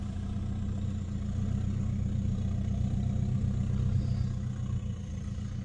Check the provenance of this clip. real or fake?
real